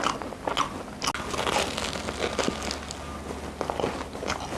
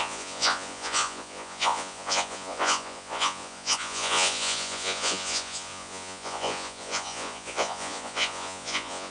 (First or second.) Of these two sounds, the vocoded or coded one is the second